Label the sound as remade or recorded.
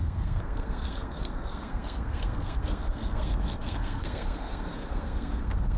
remade